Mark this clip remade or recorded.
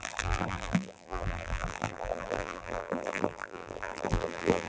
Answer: remade